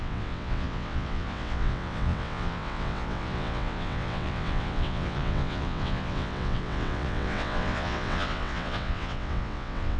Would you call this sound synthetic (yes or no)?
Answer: yes